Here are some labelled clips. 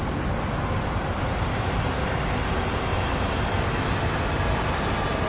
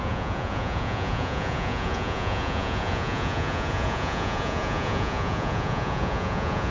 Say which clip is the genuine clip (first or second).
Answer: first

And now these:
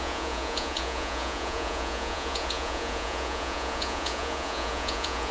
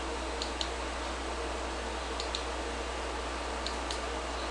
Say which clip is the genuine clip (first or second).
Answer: second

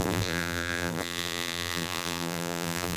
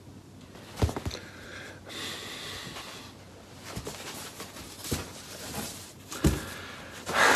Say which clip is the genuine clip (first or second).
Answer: second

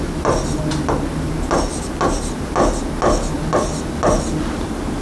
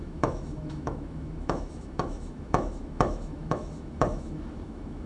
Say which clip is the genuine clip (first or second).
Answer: first